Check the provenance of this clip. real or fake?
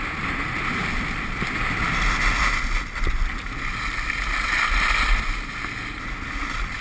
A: real